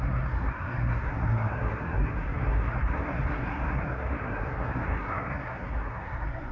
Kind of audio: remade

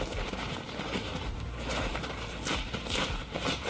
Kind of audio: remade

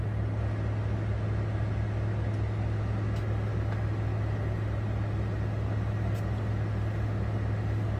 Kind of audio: recorded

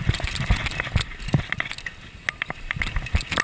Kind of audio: recorded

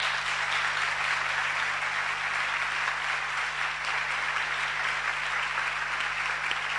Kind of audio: recorded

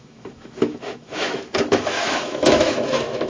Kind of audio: remade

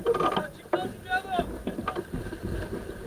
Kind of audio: recorded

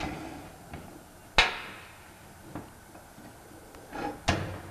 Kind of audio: recorded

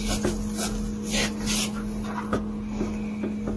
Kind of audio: recorded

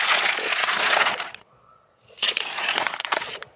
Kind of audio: remade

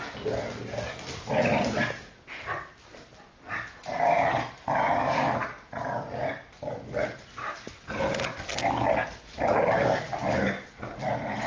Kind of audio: recorded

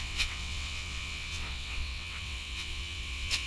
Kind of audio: remade